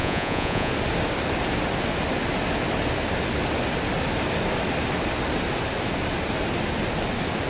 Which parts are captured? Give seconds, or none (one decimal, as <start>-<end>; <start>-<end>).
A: 0.7-7.5